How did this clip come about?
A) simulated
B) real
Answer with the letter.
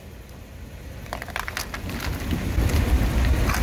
B